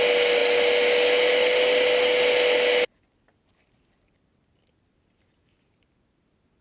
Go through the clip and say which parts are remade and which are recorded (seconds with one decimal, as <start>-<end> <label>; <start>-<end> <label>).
0.0-6.6 recorded